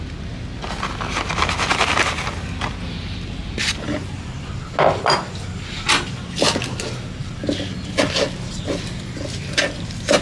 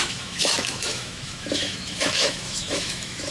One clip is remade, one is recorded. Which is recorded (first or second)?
first